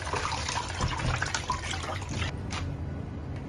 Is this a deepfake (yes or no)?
no